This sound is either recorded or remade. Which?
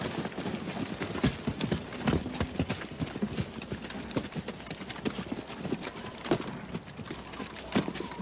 recorded